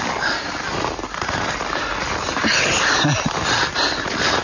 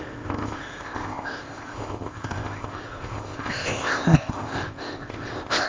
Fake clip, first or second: second